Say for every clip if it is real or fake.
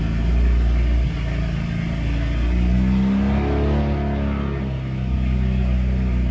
real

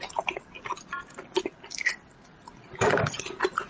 real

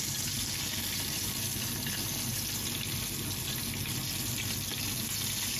real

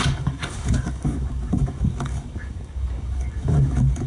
fake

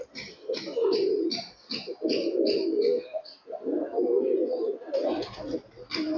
real